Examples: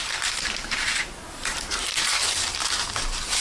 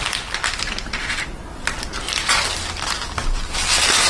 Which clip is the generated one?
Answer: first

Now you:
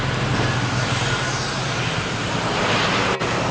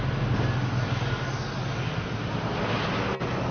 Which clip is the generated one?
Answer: first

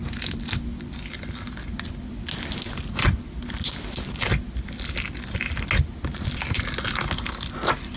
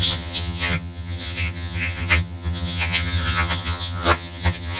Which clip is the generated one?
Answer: second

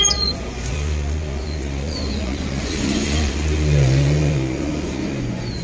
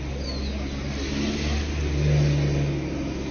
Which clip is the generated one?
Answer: first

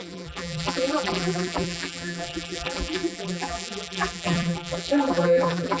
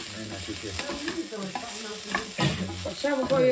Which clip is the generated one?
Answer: first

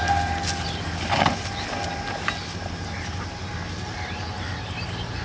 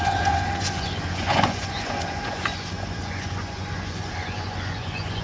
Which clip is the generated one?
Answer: second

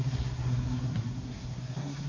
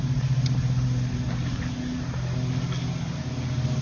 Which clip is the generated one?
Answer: first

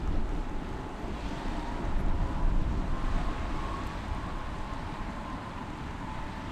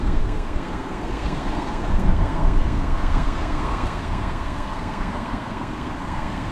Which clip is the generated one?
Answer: second